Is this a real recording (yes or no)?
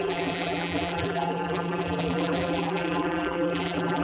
no